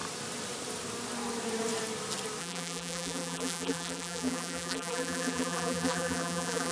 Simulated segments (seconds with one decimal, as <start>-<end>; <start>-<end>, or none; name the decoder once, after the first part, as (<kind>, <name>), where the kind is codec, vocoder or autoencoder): 2.4-6.7 (vocoder, BigVGAN v2)